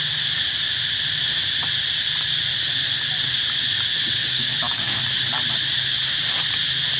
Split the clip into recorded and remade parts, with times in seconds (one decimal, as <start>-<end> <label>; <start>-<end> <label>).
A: 0.0-4.2 recorded; 4.2-5.0 remade; 5.0-7.0 recorded